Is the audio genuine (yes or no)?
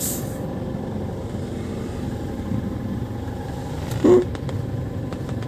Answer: yes